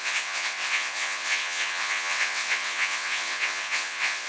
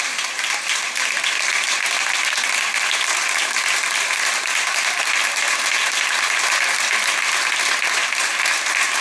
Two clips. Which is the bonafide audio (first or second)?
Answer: second